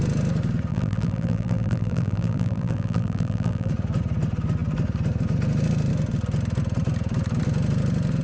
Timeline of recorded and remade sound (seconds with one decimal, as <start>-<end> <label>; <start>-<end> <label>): 0.0-0.7 recorded; 0.7-3.7 remade; 3.7-8.2 recorded